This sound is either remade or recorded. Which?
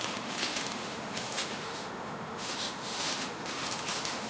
remade